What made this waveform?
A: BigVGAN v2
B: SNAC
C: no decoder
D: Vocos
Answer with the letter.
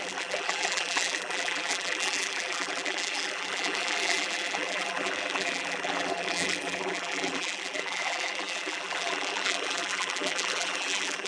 A